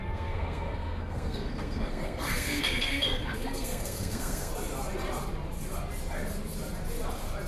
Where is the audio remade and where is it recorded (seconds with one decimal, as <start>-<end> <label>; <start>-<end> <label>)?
0.0-4.5 remade; 4.5-7.5 recorded